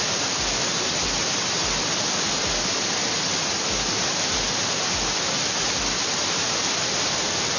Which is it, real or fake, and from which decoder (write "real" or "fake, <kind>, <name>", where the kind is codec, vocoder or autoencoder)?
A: real